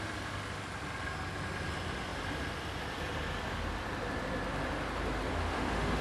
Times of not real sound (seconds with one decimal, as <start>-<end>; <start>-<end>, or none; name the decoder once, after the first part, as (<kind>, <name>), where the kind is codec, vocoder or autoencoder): 5.3-6.0 (autoencoder, DAC-VAE)